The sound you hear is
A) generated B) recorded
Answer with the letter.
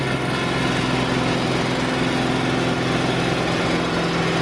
B